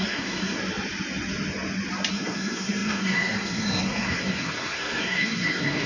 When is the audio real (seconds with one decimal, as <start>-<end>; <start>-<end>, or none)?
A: 0.6-2.1